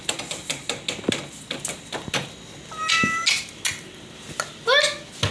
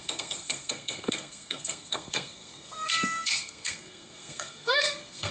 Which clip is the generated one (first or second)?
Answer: second